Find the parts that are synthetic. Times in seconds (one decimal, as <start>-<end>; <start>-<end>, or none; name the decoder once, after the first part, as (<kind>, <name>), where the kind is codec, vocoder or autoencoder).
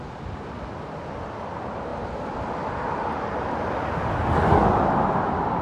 none